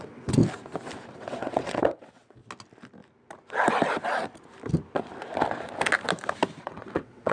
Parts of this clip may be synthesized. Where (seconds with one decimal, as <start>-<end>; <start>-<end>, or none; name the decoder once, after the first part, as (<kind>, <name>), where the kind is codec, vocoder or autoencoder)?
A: 0.0-0.4 (vocoder, WaveNeXt); 1.1-2.4; 6.6-7.3